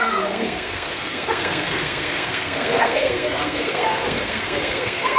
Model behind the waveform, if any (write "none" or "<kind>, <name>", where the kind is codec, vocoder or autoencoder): codec, SNAC